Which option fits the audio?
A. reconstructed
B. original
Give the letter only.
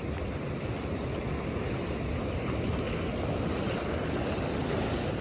B